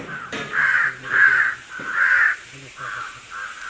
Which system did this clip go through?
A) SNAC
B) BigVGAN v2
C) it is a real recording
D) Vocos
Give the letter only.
B